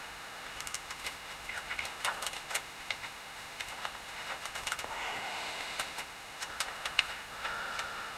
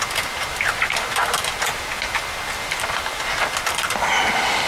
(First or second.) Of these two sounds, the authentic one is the second